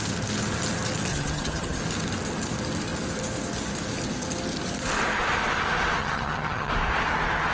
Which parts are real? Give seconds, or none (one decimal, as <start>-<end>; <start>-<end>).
0.0-1.1; 1.8-6.0; 6.7-7.5